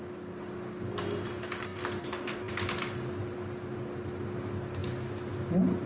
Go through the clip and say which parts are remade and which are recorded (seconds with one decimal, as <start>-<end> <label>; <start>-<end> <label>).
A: 0.0-5.9 recorded